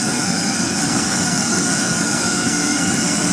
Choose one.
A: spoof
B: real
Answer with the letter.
A